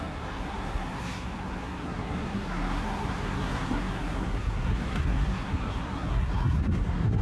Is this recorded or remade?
remade